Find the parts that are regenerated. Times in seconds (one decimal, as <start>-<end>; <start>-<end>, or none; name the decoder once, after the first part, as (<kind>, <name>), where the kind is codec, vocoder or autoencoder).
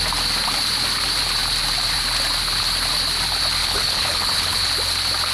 3.6-4.6 (codec, HILCodec)